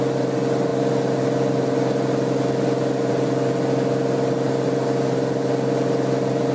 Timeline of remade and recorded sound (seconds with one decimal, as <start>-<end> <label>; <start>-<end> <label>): 0.0-6.5 recorded